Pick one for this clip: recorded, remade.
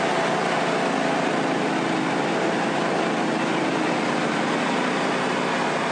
recorded